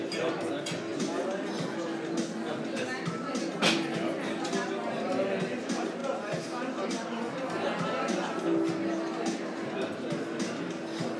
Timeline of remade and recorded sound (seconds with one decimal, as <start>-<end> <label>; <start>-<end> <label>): 0.0-11.2 recorded